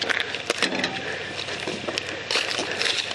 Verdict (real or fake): real